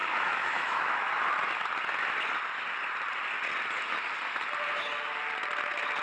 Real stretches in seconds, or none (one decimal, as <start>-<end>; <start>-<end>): 1.1-6.0

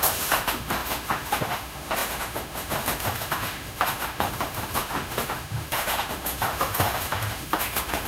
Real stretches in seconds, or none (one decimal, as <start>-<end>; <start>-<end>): none

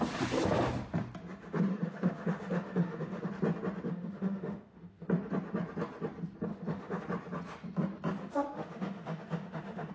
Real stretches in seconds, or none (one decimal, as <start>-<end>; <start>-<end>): 0.0-1.7; 3.3-3.9; 5.1-6.5; 7.0-8.2

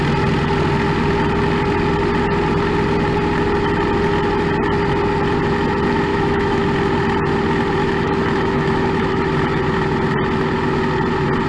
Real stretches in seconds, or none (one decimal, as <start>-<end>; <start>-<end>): 0.0-6.1; 6.6-7.8; 9.2-11.5

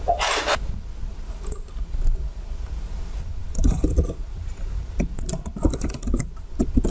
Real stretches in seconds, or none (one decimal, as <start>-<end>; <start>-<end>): 0.0-6.9

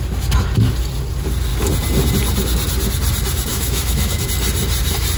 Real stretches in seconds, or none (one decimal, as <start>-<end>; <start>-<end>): 0.0-3.5; 4.2-5.2